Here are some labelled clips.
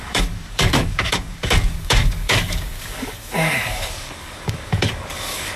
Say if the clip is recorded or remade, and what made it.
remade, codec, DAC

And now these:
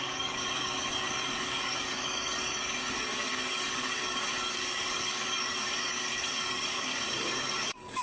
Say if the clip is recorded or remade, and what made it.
remade, codec, DAC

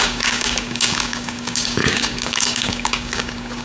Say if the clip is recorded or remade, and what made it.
remade, codec, DAC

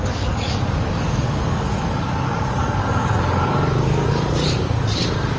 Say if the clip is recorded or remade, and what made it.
remade, codec, DAC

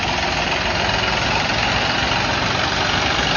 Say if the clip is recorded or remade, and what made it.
recorded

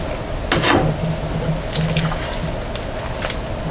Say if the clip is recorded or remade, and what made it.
recorded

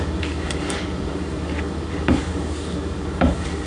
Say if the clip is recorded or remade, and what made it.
remade, codec, DAC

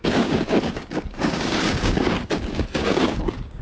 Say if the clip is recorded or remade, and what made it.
remade, codec, DAC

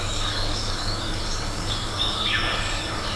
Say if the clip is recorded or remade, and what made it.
remade, codec, DAC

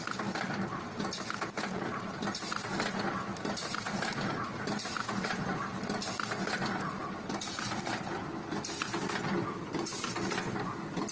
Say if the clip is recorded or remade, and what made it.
recorded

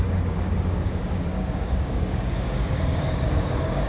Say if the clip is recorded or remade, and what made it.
remade, codec, DAC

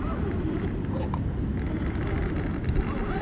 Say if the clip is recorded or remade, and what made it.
recorded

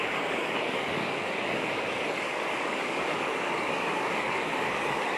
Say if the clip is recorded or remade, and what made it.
remade, codec, DAC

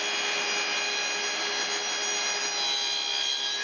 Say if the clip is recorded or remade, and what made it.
recorded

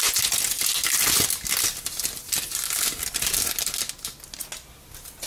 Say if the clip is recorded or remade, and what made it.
recorded